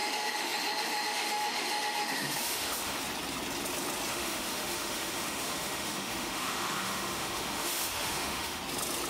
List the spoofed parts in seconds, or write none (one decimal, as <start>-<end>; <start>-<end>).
0.0-3.0; 4.1-8.6